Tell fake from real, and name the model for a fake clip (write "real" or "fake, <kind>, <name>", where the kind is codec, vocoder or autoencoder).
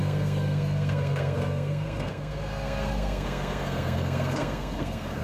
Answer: fake, codec, SNAC